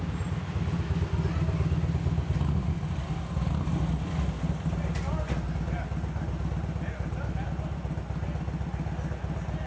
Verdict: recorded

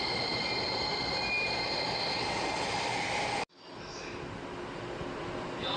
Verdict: recorded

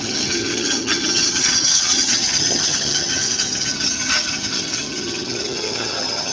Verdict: remade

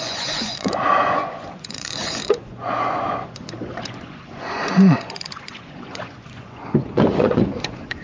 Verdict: remade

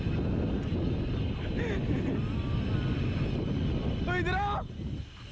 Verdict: recorded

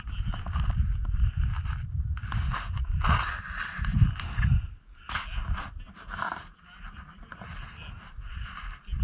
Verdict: recorded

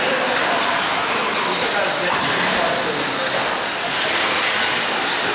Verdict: recorded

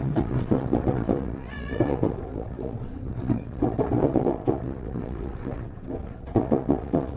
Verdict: remade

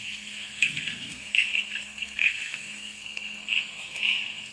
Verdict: remade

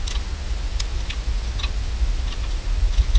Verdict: recorded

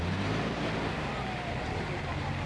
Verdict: remade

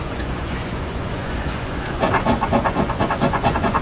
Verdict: remade